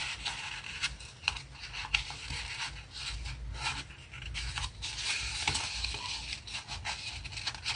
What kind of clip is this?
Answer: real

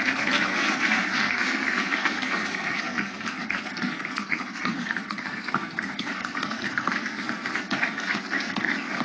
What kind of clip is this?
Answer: fake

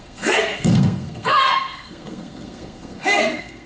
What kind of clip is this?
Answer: fake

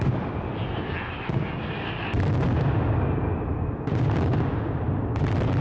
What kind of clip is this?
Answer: real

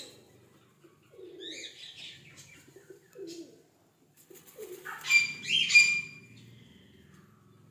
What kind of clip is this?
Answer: real